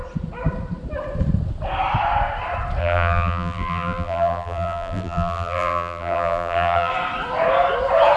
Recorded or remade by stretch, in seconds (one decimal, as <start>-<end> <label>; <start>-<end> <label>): 0.0-2.8 recorded; 2.8-6.9 remade; 6.9-8.2 recorded